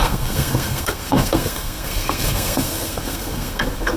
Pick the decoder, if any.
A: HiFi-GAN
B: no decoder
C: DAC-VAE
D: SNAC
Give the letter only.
D